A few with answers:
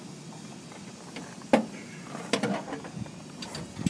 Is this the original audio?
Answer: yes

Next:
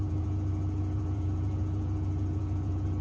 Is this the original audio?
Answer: no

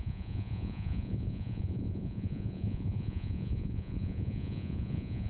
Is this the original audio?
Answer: no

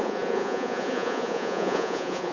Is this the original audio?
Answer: no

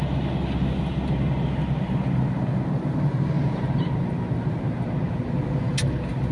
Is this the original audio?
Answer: yes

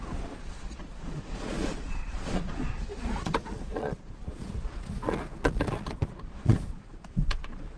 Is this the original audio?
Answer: no